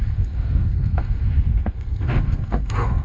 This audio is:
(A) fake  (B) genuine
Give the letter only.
A